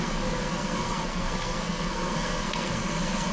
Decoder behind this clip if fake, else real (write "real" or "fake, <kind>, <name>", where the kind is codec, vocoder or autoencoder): fake, codec, SNAC